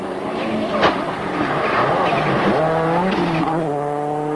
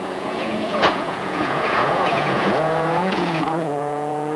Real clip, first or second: first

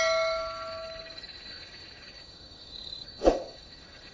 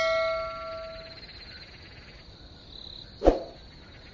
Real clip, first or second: second